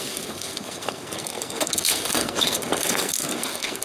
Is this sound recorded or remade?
remade